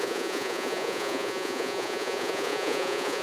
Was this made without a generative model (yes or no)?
no